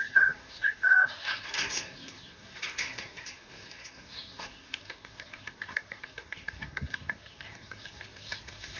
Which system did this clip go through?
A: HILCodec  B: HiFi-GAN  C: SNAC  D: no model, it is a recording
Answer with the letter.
C